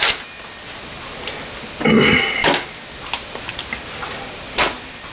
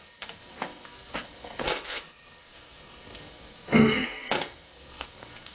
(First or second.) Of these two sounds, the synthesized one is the second